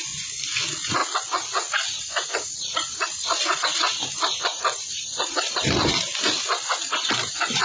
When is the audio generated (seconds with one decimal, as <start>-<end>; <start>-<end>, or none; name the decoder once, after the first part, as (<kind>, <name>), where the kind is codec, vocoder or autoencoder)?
0.0-1.0 (vocoder, BigVGAN v2); 1.7-7.6